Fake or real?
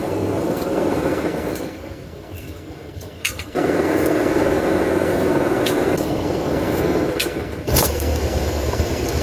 fake